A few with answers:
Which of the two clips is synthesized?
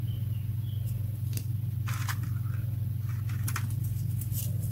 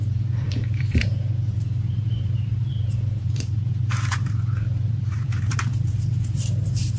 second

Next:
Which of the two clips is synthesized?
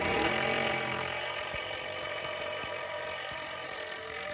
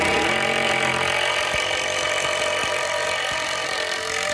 first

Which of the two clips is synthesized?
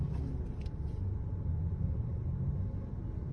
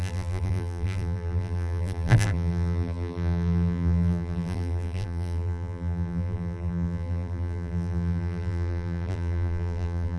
second